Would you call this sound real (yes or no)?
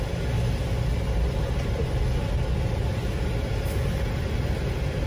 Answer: yes